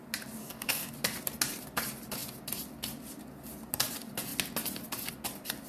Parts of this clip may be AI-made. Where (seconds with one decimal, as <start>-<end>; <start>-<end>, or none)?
0.4-0.9